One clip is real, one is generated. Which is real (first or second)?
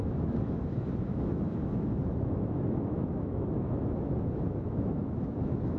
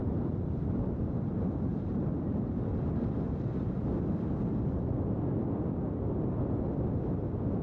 second